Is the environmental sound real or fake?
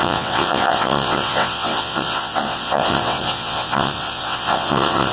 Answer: fake